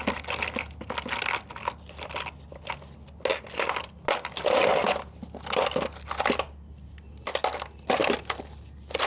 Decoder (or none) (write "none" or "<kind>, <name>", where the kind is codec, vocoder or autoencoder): none